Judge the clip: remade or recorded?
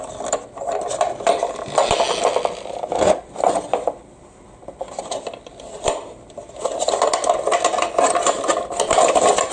recorded